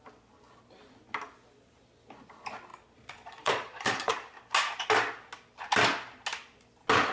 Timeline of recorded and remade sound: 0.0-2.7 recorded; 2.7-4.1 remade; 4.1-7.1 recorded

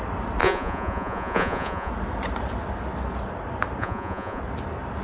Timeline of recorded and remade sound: 0.0-0.4 recorded; 0.4-1.9 remade; 1.9-3.8 recorded; 3.8-4.4 remade; 4.4-5.0 recorded

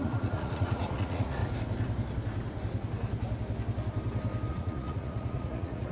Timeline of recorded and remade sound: 0.0-1.4 remade; 1.4-4.5 recorded; 4.5-5.9 remade

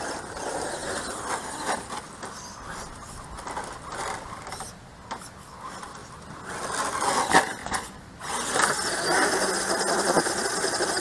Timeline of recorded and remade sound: 0.0-7.6 recorded; 7.6-8.3 remade; 8.3-11.0 recorded

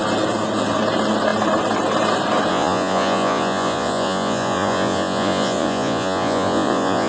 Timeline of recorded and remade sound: 0.0-2.5 recorded; 2.5-7.1 remade

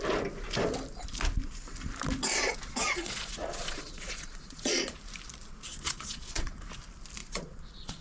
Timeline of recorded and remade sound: 0.0-2.8 recorded; 2.8-5.0 remade; 5.0-5.7 recorded; 5.7-6.6 remade; 6.6-7.2 recorded; 7.2-8.0 remade